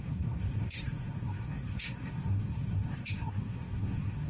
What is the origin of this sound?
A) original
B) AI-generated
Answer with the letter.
B